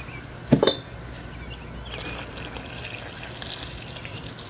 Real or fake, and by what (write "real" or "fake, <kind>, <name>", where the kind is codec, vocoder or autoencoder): real